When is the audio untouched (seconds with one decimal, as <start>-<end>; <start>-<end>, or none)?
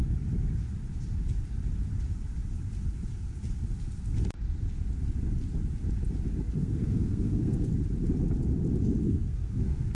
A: 0.0-6.6; 7.7-9.0